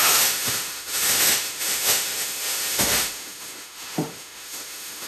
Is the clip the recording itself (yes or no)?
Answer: no